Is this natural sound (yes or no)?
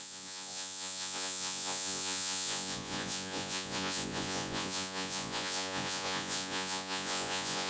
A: no